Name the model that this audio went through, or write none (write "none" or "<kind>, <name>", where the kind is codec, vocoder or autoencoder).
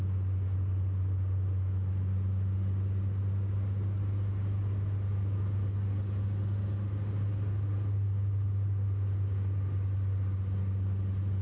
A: none